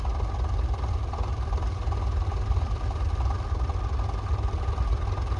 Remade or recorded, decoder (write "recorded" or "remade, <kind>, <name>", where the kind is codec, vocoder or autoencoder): recorded